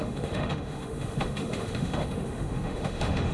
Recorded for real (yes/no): no